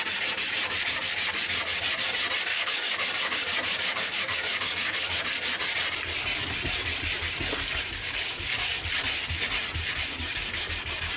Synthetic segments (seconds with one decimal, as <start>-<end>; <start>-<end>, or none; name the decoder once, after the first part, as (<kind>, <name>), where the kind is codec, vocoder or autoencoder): 2.5-5.2 (codec, DAC); 8.0-8.9